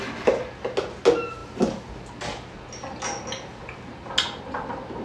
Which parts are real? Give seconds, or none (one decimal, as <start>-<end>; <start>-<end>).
0.0-5.0